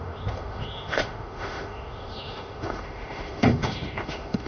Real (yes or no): no